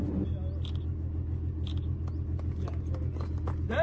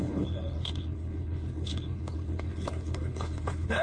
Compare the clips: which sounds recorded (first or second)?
first